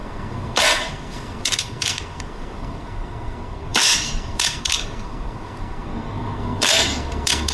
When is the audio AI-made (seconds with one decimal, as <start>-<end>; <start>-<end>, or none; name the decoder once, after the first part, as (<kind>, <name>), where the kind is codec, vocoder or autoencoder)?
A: 0.0-7.5 (codec, SNAC)